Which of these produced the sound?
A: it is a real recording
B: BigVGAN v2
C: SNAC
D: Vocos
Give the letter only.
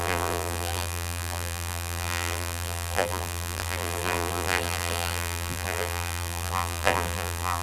B